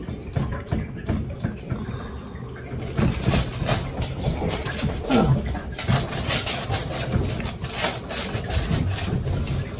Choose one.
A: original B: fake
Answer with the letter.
A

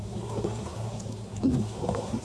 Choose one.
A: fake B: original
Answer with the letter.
A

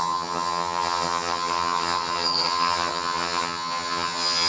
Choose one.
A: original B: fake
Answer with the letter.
B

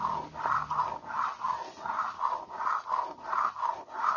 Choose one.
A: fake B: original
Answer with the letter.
B